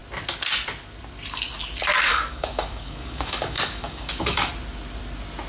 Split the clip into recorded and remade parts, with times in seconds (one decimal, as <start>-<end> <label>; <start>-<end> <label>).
0.0-2.1 recorded; 2.1-4.5 remade; 4.5-5.5 recorded